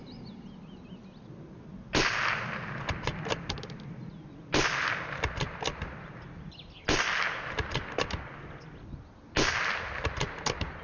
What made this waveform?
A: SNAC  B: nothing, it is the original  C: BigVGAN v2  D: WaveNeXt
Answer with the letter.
B